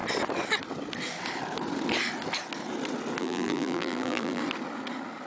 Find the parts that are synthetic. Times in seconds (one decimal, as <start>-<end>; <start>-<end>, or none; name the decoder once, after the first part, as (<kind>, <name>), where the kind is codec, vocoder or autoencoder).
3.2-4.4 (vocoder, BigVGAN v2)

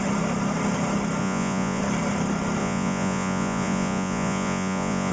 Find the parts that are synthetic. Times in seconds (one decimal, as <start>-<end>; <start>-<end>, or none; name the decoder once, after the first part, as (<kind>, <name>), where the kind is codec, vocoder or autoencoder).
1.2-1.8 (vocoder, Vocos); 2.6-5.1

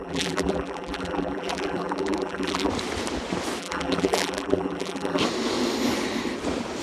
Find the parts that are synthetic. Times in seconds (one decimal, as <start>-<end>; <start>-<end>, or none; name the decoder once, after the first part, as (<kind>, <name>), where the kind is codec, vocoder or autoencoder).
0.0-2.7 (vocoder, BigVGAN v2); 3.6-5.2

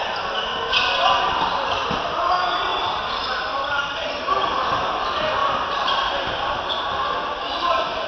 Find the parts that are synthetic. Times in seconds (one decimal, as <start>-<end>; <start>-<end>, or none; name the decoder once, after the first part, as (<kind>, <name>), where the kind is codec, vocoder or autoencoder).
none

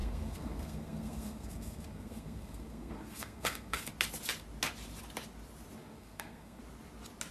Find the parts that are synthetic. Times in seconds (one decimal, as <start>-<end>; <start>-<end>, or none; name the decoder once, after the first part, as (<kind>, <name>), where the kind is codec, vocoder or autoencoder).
0.0-3.9 (codec, SNAC); 5.8-6.6